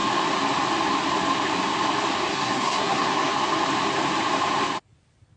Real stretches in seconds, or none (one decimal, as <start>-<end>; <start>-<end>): 0.0-2.3; 3.3-5.4